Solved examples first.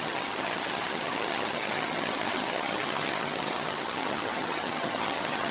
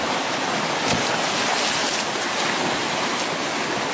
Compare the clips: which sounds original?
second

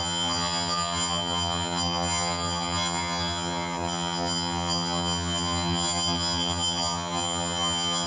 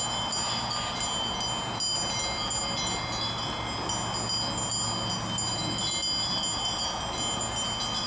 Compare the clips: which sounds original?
second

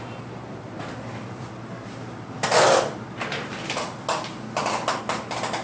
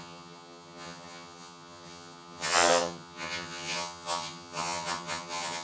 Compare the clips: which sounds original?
first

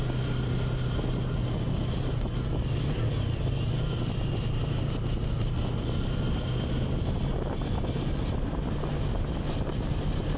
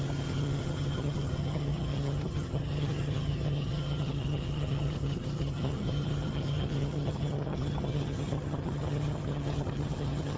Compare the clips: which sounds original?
first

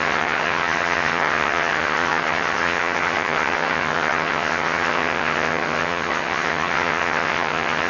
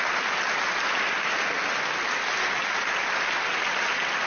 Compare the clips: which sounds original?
second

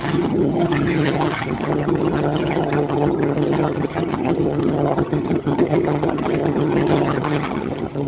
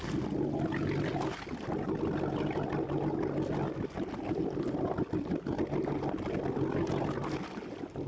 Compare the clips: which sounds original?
second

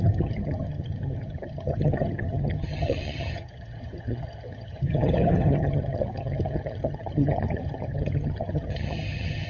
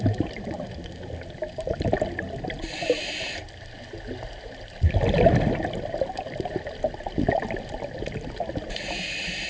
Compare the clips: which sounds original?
second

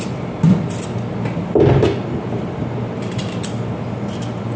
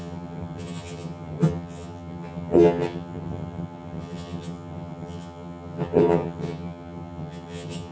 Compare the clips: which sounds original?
first